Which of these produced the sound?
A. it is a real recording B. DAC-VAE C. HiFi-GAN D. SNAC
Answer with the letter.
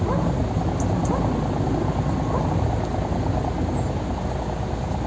A